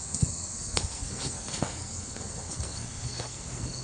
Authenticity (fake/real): fake